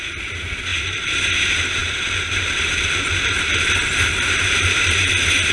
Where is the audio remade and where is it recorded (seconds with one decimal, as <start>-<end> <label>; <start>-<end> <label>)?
0.0-0.7 recorded; 0.7-1.3 remade; 1.3-1.8 recorded; 1.8-5.1 remade; 5.1-5.5 recorded

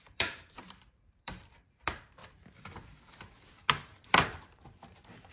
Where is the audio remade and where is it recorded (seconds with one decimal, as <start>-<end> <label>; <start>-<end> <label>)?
0.0-2.2 remade; 2.2-3.5 recorded; 3.5-5.3 remade

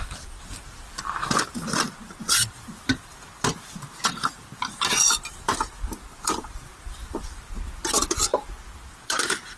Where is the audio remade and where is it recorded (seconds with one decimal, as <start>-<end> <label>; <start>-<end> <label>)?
0.0-9.6 remade

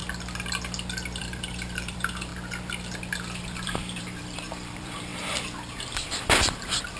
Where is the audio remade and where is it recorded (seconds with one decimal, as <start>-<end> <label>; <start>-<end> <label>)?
0.0-1.2 recorded; 1.2-2.3 remade; 2.3-3.4 recorded; 3.4-5.1 remade; 5.1-5.9 recorded; 5.9-7.0 remade

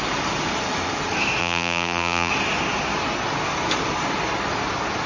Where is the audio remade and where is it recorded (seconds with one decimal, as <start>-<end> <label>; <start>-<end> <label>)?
0.0-1.4 recorded; 1.4-2.3 remade; 2.3-5.1 recorded

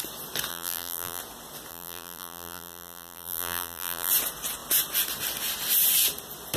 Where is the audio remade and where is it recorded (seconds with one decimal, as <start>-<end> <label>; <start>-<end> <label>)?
0.0-0.5 recorded; 0.5-1.2 remade; 1.2-1.7 recorded; 1.7-4.1 remade; 4.1-6.6 recorded

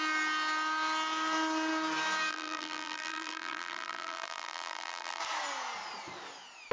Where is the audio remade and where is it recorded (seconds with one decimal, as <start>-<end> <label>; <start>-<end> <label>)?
0.0-2.3 recorded; 2.3-5.2 remade; 5.2-6.7 recorded